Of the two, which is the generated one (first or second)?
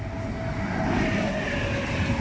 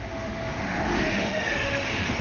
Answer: second